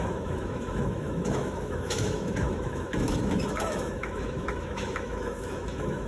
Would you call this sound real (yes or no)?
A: no